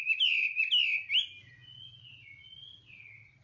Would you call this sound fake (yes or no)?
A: no